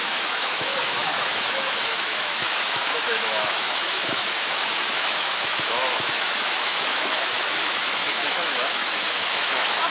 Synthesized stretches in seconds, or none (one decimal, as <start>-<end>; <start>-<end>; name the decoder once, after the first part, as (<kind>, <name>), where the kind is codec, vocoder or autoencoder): 0.0-9.9 (autoencoder, DAC-VAE)